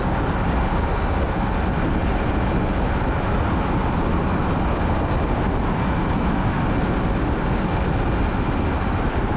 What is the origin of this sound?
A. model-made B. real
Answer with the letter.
B